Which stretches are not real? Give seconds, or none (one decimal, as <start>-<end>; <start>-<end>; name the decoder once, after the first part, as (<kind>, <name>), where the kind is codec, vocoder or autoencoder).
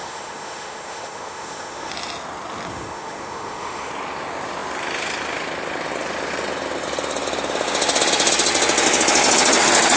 0.0-1.9 (autoencoder, DAC-VAE); 2.7-3.9